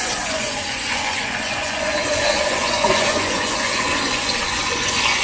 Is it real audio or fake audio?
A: fake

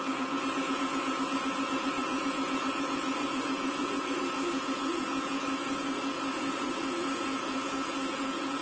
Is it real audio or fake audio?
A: fake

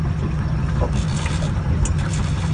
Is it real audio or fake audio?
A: real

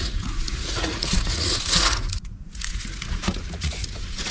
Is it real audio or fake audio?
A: fake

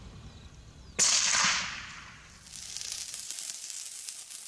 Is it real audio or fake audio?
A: real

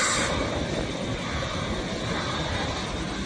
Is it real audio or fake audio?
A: real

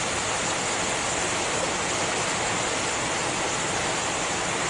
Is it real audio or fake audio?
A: real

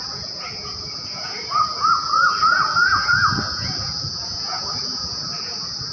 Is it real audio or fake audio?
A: fake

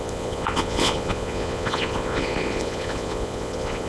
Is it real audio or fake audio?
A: fake